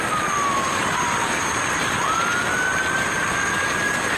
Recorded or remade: remade